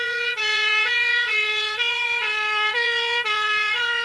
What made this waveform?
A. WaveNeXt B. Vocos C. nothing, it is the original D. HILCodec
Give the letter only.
B